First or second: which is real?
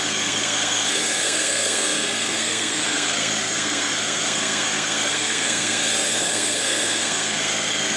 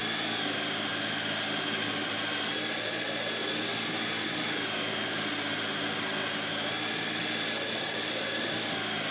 second